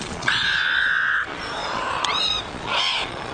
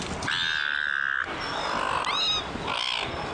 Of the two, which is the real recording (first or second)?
second